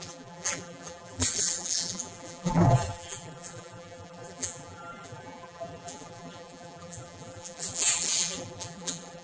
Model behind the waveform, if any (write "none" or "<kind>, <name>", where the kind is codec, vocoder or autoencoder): vocoder, BigVGAN v2